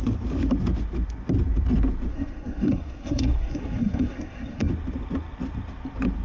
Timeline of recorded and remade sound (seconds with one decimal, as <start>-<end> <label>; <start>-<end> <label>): 0.0-2.1 recorded; 2.1-4.7 remade; 4.7-6.2 recorded